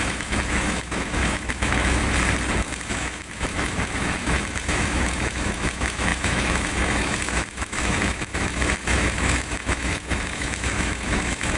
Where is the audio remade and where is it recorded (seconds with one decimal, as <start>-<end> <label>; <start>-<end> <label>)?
0.0-2.0 remade; 2.0-2.6 recorded; 2.6-11.6 remade